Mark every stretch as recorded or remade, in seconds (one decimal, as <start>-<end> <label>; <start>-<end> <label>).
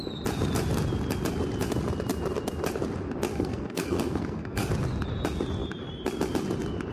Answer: 0.0-3.3 recorded; 3.3-4.7 remade; 4.7-6.9 recorded